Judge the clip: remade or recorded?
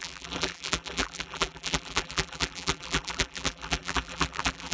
remade